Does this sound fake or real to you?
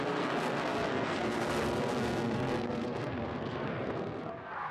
fake